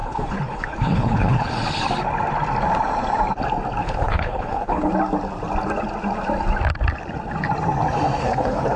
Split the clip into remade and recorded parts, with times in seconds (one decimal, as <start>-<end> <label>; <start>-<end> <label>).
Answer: 0.0-1.5 remade; 1.5-3.8 recorded; 3.8-4.9 remade; 4.9-8.2 recorded; 8.2-8.8 remade